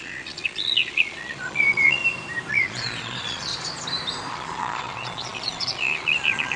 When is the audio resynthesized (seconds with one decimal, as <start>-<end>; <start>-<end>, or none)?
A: 0.0-2.0; 2.5-3.5; 4.3-6.6